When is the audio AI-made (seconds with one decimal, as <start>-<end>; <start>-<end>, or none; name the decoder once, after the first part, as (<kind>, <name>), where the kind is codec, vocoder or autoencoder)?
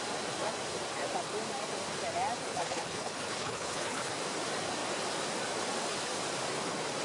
2.5-4.1 (codec, HILCodec)